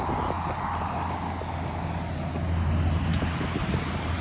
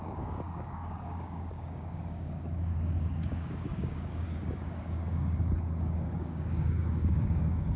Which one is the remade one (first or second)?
second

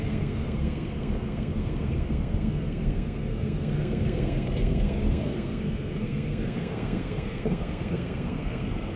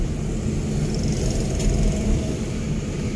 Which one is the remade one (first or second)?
first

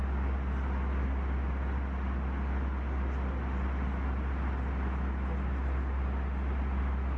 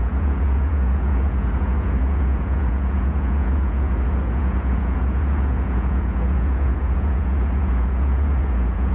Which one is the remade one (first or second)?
second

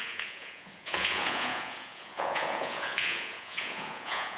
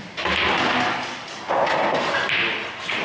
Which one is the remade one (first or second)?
first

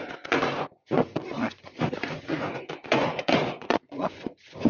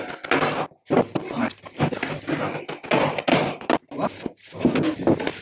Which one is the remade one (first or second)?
first